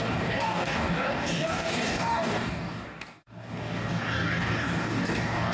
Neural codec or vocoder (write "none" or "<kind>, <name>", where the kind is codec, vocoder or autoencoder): codec, DAC